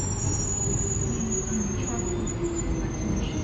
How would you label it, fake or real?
real